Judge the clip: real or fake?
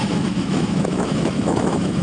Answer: fake